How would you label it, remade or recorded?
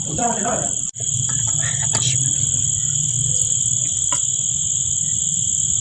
remade